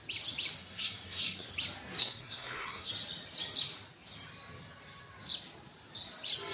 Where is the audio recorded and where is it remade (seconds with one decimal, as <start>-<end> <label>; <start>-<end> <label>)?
0.0-0.6 recorded; 0.6-1.5 remade; 1.5-2.0 recorded; 2.0-2.9 remade; 2.9-6.5 recorded